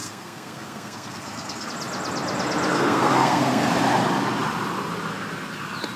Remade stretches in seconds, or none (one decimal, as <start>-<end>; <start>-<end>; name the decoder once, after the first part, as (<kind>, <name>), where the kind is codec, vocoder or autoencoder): 0.0-1.7 (codec, SNAC); 2.7-3.7